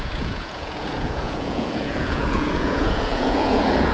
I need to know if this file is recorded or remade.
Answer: remade